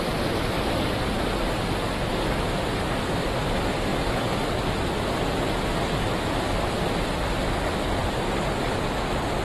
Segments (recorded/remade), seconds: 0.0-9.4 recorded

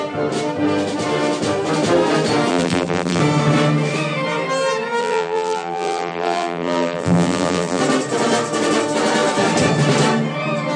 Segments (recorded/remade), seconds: 0.0-2.5 recorded; 2.5-3.2 remade; 3.2-5.0 recorded; 5.0-7.8 remade; 7.8-10.8 recorded

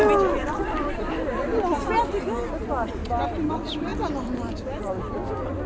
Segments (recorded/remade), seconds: 0.0-0.4 recorded; 0.4-1.1 remade; 1.1-1.5 recorded; 1.5-2.0 remade; 2.0-3.9 recorded; 3.9-5.7 remade

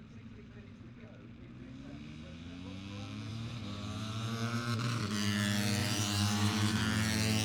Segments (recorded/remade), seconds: 0.0-3.3 recorded; 3.3-5.0 remade; 5.0-5.8 recorded; 5.8-6.8 remade; 6.8-7.4 recorded